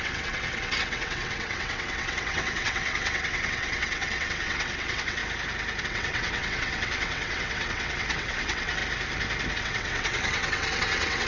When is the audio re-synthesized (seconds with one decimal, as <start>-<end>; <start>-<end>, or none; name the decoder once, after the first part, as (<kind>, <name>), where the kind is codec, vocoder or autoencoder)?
0.0-5.2 (vocoder, WaveNeXt); 5.8-8.8; 9.6-11.3